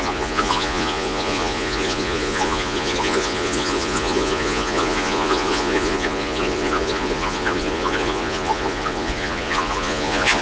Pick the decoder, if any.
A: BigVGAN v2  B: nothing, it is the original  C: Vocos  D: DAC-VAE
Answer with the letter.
C